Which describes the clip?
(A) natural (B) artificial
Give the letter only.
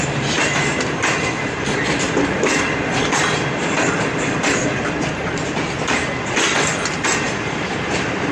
B